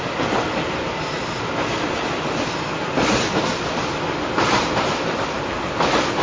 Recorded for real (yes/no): yes